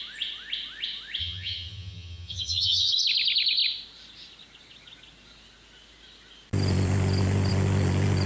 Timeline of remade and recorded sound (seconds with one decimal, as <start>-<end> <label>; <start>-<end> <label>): 0.0-1.2 recorded; 1.2-2.9 remade; 2.9-8.3 recorded